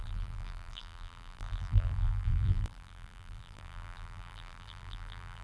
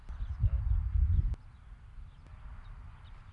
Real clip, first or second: second